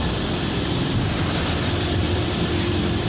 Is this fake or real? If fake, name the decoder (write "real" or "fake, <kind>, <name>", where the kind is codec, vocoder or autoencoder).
fake, vocoder, BigVGAN v2